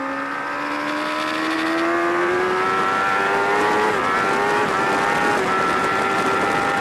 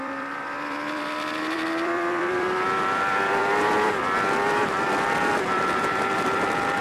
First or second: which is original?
first